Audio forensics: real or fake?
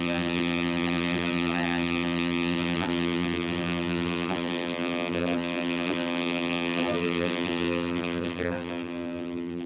fake